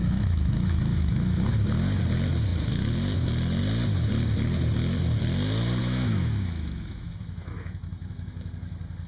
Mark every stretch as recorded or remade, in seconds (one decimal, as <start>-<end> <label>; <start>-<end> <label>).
0.0-1.5 remade; 1.5-5.8 recorded; 5.8-8.5 remade; 8.5-9.1 recorded